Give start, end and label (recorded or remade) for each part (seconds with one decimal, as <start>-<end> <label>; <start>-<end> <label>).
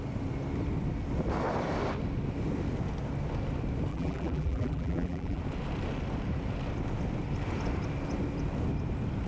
0.0-3.9 recorded; 3.9-5.4 remade; 5.4-9.3 recorded